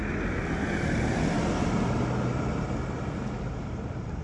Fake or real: real